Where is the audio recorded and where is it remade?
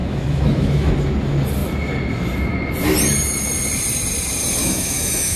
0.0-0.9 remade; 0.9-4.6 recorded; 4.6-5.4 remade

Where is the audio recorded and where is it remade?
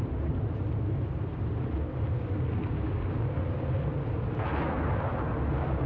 0.0-5.9 recorded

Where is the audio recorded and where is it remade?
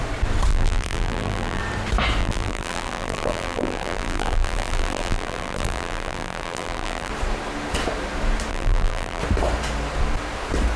0.0-0.5 recorded; 0.5-1.6 remade; 1.6-2.2 recorded; 2.2-7.1 remade; 7.1-8.5 recorded; 8.5-9.2 remade; 9.2-10.8 recorded